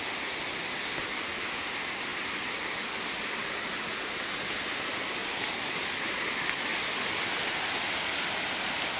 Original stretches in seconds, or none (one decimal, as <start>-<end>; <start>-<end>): 0.0-5.2; 6.0-9.0